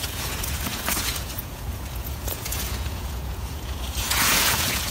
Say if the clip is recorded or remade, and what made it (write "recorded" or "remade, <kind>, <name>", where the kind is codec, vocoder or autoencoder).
remade, vocoder, Vocos